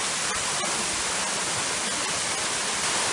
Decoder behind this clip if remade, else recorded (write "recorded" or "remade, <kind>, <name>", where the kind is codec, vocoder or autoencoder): recorded